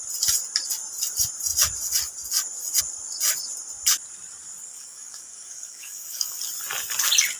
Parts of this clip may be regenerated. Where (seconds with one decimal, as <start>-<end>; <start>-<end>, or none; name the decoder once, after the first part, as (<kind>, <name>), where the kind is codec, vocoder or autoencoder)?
4.7-6.4 (codec, DAC)